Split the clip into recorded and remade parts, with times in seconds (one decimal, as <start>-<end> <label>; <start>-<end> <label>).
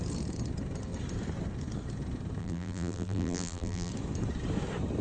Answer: 0.0-2.4 recorded; 2.4-3.9 remade; 3.9-5.0 recorded